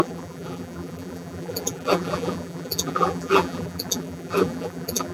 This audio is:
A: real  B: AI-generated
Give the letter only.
B